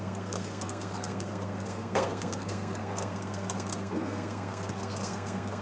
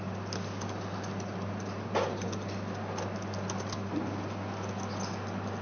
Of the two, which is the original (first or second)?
second